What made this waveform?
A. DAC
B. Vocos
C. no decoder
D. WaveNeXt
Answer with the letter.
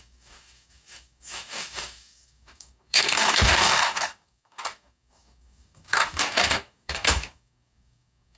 A